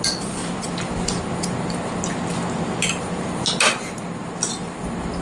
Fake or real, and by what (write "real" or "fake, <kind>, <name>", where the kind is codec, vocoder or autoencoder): real